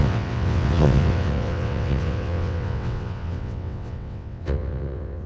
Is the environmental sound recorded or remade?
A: remade